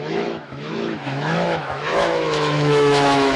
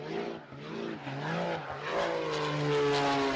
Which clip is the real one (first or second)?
second